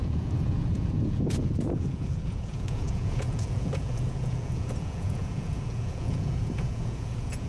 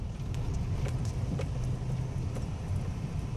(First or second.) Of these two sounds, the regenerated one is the first